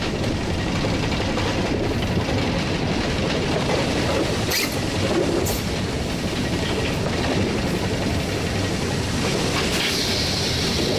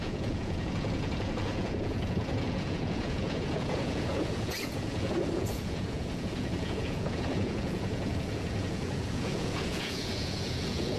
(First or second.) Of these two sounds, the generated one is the second